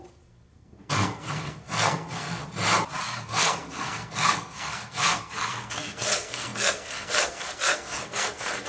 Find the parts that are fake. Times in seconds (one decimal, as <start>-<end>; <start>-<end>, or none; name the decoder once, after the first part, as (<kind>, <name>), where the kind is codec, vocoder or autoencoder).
0.0-2.4 (codec, SNAC); 3.0-8.7